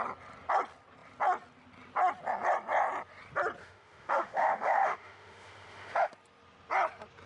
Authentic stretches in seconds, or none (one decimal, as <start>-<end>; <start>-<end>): 0.0-3.6; 6.1-7.3